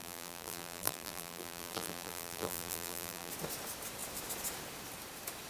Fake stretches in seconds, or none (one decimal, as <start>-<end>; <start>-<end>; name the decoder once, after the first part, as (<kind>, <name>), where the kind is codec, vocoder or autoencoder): 0.0-3.3 (vocoder, BigVGAN v2)